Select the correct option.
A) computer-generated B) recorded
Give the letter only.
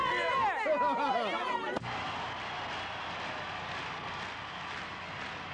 B